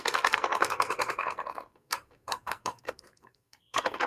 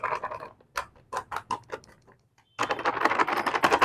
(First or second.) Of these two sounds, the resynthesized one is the first